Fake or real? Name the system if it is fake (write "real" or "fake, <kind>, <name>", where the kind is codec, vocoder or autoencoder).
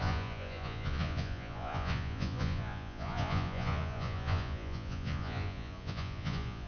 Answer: fake, vocoder, Vocos